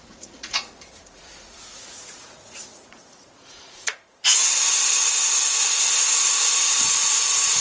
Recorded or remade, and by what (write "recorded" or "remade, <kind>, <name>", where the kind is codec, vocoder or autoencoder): remade, vocoder, Vocos